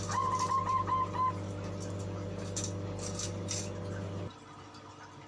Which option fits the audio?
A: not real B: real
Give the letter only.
B